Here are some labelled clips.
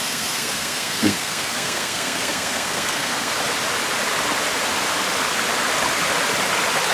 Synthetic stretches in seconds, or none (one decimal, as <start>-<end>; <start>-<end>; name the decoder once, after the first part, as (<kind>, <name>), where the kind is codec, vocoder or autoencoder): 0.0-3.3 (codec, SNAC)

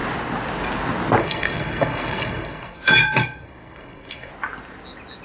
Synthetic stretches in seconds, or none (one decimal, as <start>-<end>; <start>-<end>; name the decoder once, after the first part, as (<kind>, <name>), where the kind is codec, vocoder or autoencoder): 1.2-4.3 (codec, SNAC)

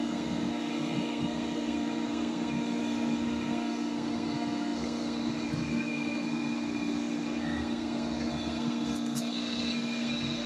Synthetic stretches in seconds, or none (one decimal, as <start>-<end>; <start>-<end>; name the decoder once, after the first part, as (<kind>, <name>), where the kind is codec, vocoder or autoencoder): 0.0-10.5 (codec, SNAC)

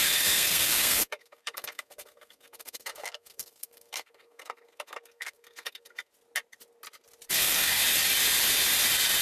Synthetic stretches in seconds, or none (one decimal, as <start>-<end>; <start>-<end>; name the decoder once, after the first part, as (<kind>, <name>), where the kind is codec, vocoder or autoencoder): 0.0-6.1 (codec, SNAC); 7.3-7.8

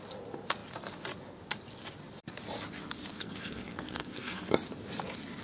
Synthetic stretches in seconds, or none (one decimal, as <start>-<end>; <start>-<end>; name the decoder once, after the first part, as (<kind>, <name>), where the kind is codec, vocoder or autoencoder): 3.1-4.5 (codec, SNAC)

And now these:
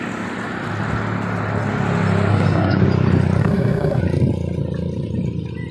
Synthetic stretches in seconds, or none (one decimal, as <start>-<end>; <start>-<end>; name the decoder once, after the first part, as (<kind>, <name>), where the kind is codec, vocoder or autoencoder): 2.3-2.8 (codec, SNAC); 3.4-4.0

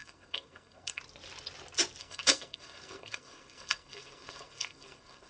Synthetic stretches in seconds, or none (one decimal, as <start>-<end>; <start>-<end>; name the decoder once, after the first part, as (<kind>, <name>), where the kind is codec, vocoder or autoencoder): 0.0-1.0 (codec, SNAC); 2.0-5.3

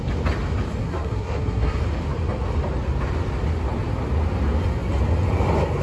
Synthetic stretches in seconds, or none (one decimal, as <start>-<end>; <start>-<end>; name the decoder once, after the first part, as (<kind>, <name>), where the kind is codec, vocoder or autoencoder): 0.8-1.8 (codec, SNAC)